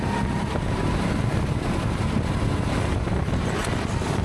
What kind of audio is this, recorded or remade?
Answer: recorded